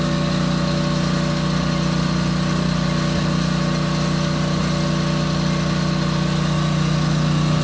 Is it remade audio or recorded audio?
recorded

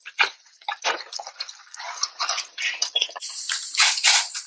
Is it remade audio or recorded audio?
remade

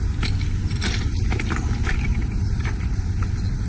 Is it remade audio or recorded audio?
recorded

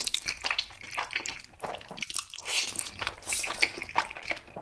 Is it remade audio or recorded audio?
remade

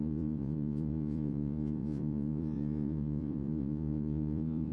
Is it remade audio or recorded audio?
remade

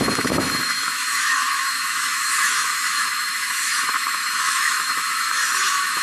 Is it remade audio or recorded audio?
remade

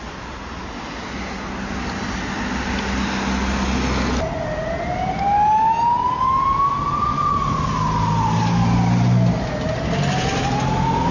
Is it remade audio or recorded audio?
recorded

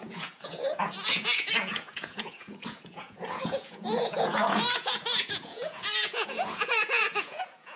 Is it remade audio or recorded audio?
remade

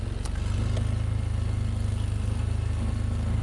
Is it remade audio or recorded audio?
recorded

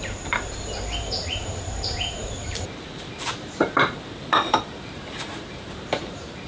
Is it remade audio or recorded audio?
remade